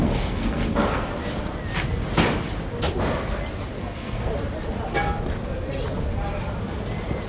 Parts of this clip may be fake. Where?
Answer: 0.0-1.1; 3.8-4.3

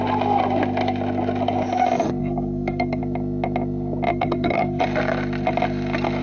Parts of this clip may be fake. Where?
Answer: 2.2-3.0; 4.1-4.8

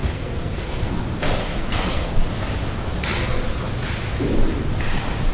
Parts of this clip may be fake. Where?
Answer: 0.0-0.9; 1.4-2.1